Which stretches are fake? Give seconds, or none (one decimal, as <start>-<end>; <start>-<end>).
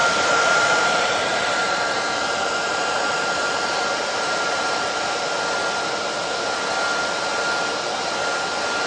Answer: 0.0-5.2